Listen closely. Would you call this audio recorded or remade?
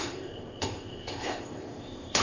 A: remade